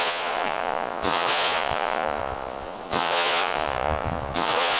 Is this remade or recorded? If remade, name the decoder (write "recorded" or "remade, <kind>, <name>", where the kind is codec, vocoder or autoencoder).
remade, vocoder, Vocos